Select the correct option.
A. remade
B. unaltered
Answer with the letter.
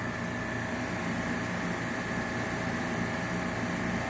B